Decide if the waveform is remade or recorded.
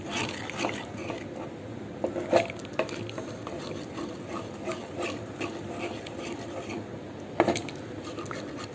recorded